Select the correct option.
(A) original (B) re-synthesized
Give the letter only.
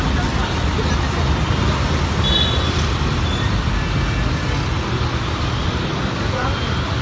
A